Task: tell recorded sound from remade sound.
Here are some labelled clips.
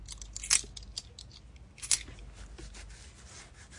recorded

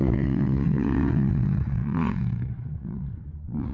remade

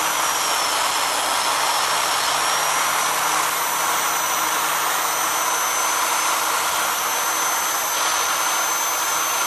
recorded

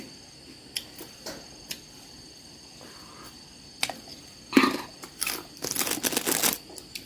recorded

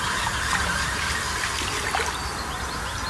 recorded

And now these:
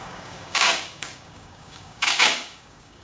remade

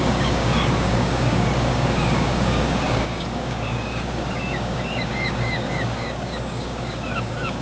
remade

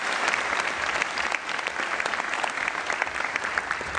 recorded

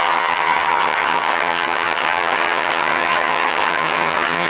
remade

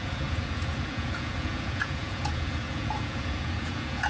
remade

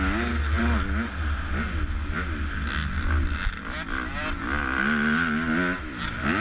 recorded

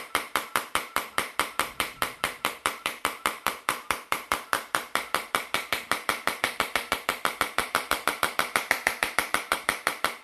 remade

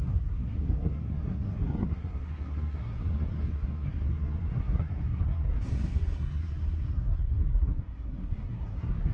remade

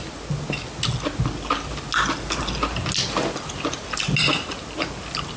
recorded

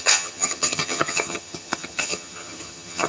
remade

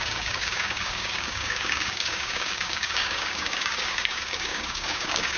remade